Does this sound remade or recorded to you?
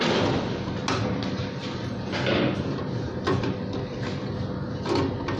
recorded